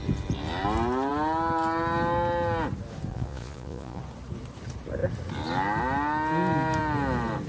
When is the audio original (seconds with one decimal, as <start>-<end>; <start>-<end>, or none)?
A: 0.0-3.1; 4.0-7.5